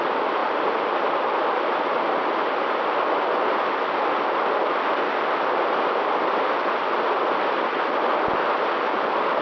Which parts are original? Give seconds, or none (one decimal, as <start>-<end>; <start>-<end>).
0.0-9.4